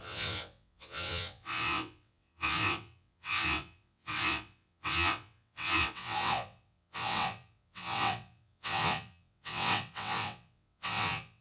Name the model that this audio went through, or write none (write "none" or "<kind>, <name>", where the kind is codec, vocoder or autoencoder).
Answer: vocoder, WaveNeXt